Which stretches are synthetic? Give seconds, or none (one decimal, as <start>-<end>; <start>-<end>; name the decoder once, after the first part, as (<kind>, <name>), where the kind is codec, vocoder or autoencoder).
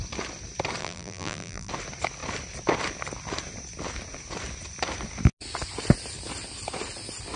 0.8-1.7 (vocoder, BigVGAN v2)